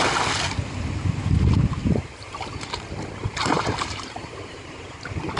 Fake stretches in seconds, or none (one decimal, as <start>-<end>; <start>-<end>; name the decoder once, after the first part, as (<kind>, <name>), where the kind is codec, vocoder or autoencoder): 1.8-5.0 (vocoder, BigVGAN v2)